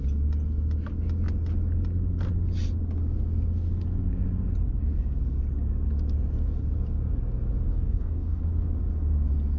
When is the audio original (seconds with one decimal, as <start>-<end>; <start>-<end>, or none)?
0.0-7.7; 8.4-9.6